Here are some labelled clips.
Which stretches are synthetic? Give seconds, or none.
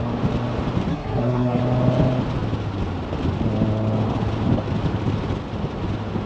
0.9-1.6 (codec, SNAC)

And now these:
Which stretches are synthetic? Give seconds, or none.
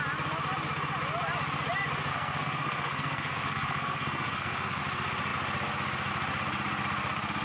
2.1-4.8 (codec, SNAC)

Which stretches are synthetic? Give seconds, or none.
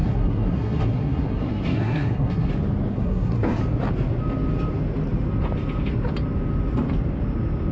0.0-2.5 (codec, SNAC); 2.9-3.6